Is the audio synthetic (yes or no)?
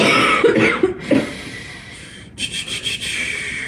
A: no